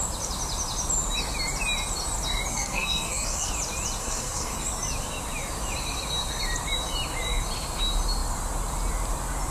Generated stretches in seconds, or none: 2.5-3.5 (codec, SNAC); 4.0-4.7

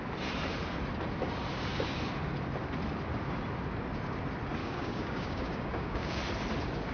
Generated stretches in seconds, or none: 4.6-6.2 (codec, DAC)

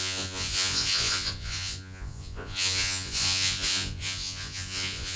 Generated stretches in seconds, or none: 0.0-5.2 (vocoder, Vocos)

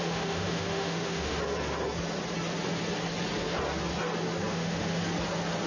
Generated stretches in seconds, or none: 0.0-1.4 (autoencoder, DAC-VAE); 4.5-5.0

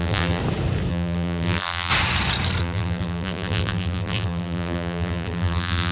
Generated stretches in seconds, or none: 0.0-0.4 (vocoder, BigVGAN v2); 0.9-1.9; 2.6-5.9

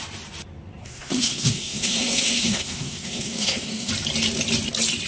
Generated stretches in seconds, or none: 0.8-3.9 (codec, SNAC)